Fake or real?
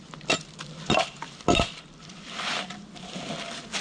fake